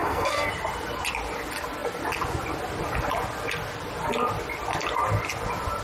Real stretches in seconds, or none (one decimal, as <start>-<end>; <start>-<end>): 0.5-5.8

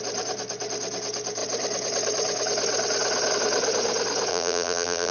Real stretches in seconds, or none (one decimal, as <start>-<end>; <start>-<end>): 0.0-4.3

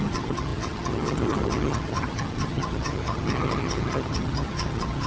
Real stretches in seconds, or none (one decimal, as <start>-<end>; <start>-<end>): none